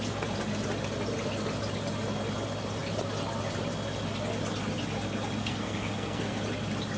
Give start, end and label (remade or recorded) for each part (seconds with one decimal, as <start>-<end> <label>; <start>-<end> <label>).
0.0-5.4 recorded; 5.4-6.4 remade; 6.4-7.0 recorded